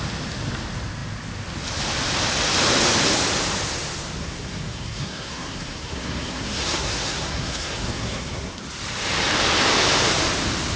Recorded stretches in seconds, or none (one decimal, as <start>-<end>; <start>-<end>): 0.0-4.2; 8.6-10.8